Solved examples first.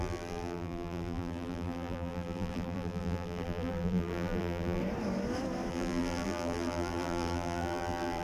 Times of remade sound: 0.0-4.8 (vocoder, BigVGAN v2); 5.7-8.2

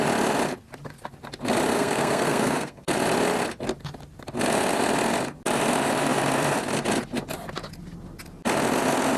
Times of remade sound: 1.7-2.9 (codec, SNAC)